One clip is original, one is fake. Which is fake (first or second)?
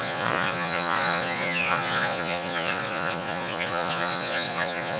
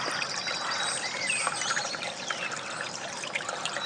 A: first